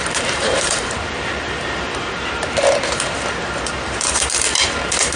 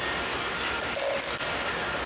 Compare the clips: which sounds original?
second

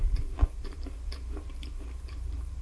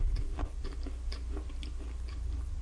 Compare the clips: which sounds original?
second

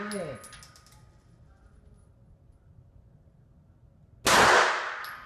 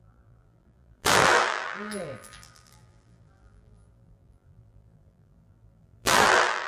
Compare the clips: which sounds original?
first